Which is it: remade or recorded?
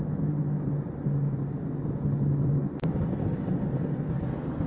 recorded